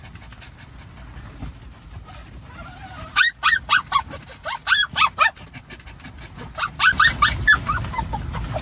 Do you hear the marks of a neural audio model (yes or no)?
no